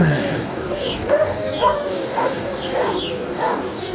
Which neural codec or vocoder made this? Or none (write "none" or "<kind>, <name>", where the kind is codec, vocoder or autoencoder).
codec, DAC